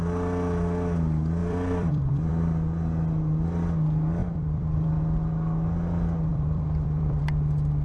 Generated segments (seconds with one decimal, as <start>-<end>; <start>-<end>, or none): 1.4-2.3; 4.2-5.0; 6.3-7.2